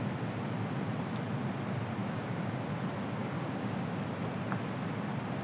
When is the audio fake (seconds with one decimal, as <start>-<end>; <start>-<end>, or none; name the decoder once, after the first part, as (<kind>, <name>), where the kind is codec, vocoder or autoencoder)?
2.0-2.5 (codec, DAC); 3.2-4.0